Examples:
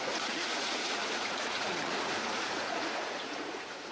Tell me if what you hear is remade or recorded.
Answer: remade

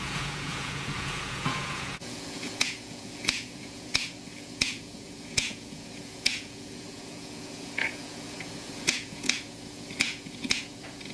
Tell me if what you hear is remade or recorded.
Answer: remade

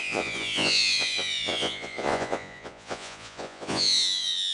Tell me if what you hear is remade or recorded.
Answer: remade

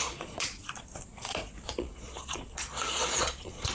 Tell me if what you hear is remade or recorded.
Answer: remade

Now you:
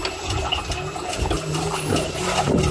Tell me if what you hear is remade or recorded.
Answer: recorded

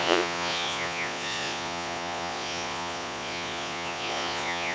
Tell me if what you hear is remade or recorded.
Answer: remade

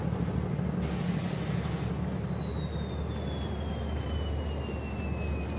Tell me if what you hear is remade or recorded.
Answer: recorded